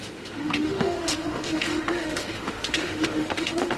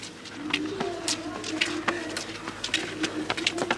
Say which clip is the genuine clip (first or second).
second